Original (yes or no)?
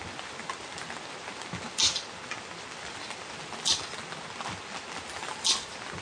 yes